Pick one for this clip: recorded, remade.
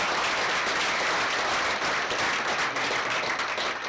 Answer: recorded